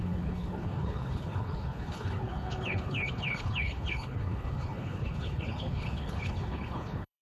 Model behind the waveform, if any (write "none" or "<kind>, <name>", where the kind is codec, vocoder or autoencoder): codec, HILCodec